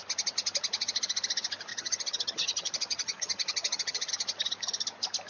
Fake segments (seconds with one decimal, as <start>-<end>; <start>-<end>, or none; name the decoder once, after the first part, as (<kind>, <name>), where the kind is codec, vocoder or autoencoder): 1.7-4.1 (vocoder, HiFi-GAN)